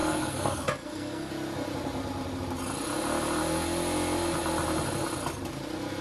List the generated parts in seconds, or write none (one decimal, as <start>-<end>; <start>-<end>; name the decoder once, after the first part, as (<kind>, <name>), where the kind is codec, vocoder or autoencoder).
0.0-1.3 (codec, SNAC)